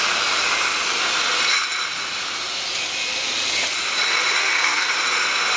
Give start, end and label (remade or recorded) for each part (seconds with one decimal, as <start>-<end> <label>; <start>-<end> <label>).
0.0-4.4 recorded; 4.4-4.9 remade; 4.9-5.6 recorded